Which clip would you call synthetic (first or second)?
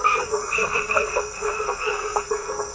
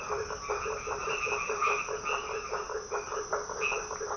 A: first